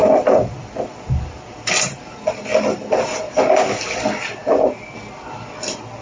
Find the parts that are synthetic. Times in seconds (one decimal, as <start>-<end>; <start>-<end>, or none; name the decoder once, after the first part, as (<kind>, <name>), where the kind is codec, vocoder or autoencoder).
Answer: 0.0-1.2 (vocoder, BigVGAN v2); 2.5-3.2